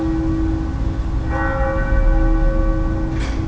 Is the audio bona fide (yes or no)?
yes